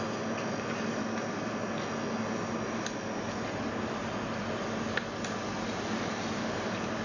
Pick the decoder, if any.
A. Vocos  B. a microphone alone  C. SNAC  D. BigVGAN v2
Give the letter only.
B